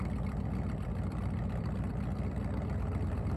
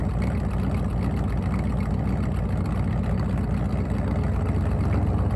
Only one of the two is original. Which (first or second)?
second